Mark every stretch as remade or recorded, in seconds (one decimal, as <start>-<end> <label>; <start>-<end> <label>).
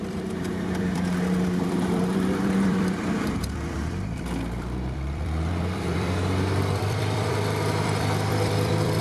0.0-9.0 remade